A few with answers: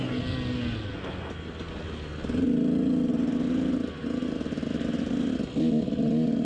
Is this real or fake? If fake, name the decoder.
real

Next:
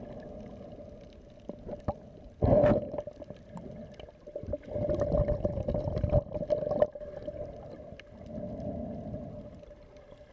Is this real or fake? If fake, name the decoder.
real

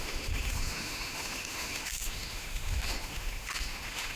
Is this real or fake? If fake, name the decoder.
fake, autoencoder, DAC-VAE